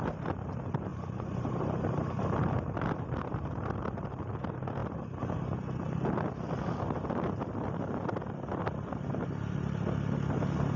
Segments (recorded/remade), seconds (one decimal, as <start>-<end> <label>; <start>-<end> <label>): 0.0-0.9 recorded; 0.9-4.2 remade; 4.2-10.8 recorded